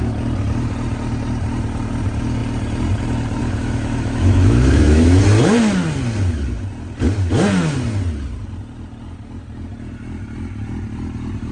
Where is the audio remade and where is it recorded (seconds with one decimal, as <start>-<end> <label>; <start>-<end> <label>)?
0.0-3.4 recorded; 3.4-5.2 remade; 5.2-11.5 recorded